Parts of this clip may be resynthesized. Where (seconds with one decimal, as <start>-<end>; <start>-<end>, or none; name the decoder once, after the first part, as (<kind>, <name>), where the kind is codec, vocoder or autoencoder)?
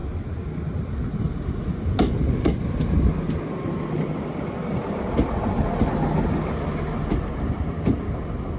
none